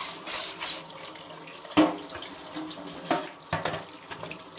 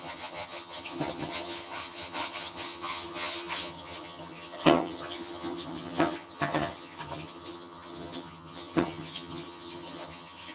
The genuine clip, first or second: first